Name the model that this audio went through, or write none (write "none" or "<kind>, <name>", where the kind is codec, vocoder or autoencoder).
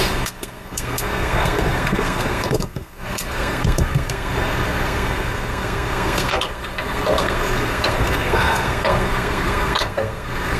codec, SNAC